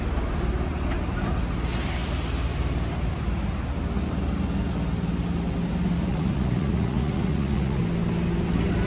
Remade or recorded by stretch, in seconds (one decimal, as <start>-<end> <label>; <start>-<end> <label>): 0.0-6.1 recorded; 6.1-7.8 remade; 7.8-8.9 recorded